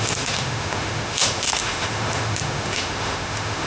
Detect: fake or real fake